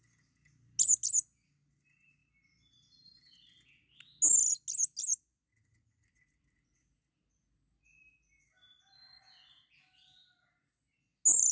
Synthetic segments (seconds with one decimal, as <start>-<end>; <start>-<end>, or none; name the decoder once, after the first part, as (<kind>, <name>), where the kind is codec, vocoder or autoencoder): none